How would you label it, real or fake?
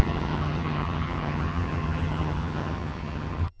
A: fake